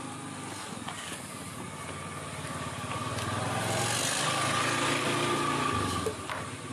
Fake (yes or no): no